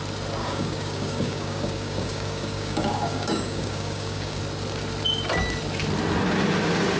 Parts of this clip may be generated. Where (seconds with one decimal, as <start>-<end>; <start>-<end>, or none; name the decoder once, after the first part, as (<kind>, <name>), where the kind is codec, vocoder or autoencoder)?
0.4-4.4 (codec, DAC)